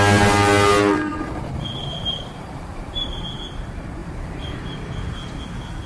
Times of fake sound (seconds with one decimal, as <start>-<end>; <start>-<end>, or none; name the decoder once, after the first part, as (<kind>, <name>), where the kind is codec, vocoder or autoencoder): 1.1-3.2 (vocoder, BigVGAN v2); 4.0-4.6